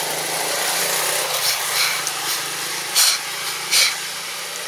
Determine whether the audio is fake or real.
real